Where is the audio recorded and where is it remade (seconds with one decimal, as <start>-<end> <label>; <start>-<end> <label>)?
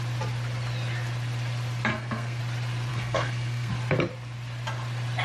0.0-1.9 recorded; 1.9-2.4 remade; 2.4-2.9 recorded; 2.9-3.7 remade; 3.7-5.2 recorded